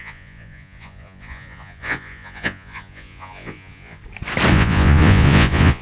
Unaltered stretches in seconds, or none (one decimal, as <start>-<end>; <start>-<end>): 4.0-4.5